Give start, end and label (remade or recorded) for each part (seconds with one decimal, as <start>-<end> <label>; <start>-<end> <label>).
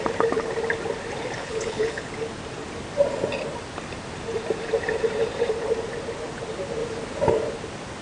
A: 0.0-1.4 recorded; 1.4-2.1 remade; 2.1-8.0 recorded